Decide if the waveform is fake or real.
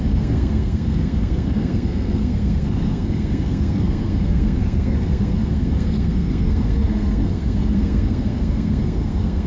fake